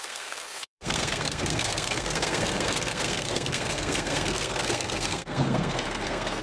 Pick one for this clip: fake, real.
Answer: fake